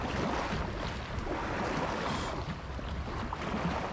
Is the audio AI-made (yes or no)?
no